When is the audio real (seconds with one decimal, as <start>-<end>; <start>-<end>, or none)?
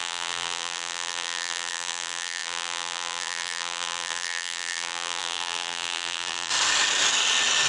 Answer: 6.5-7.7